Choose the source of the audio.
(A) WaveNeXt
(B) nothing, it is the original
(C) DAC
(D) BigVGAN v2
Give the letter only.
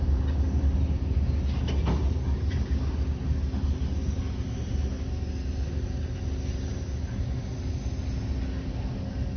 B